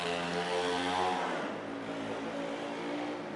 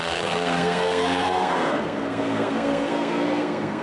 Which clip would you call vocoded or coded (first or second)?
second